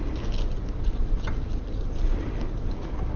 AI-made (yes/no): no